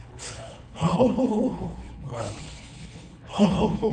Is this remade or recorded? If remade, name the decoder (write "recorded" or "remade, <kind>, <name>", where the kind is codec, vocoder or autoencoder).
remade, codec, HILCodec